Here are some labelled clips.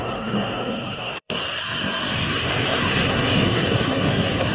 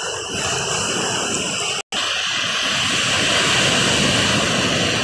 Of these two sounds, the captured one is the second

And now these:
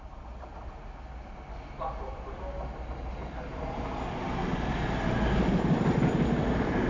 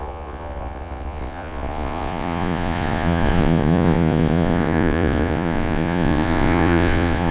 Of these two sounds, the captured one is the first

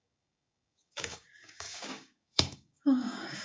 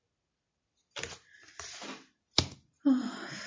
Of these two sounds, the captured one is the second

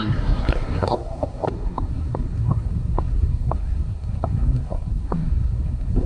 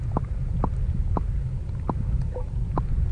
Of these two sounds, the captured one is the second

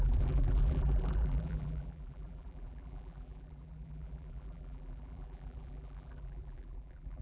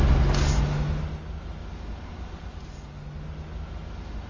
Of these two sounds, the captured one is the second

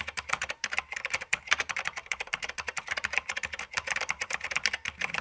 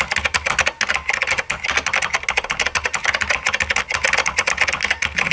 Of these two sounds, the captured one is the second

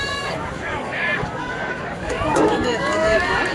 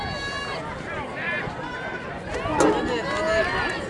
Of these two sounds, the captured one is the second